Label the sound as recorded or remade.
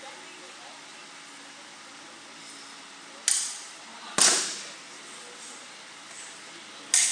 recorded